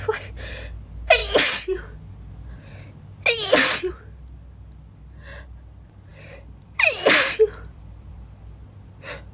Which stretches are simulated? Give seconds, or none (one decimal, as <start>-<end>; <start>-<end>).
6.1-8.6